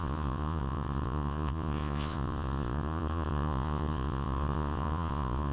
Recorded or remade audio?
remade